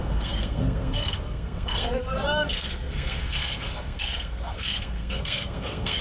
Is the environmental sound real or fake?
fake